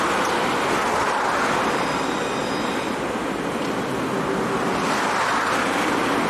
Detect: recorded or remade recorded